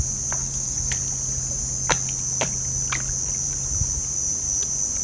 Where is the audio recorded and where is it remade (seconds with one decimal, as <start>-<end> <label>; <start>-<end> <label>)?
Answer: 0.0-0.4 recorded; 0.4-0.9 remade; 0.9-5.0 recorded